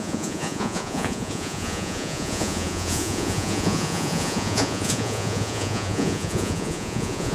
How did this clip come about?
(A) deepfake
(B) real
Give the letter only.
A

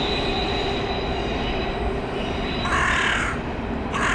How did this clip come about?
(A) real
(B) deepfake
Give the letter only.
A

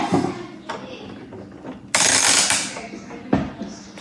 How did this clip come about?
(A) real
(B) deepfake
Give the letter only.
A